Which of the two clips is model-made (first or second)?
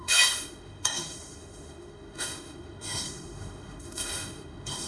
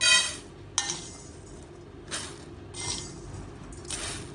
first